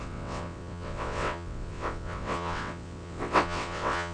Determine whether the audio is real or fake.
fake